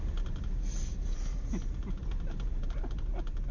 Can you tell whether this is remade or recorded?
recorded